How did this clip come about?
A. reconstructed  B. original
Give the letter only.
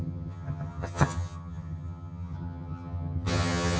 A